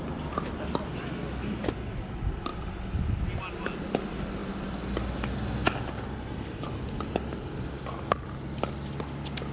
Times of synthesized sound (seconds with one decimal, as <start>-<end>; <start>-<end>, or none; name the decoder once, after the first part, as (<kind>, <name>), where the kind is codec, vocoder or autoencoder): none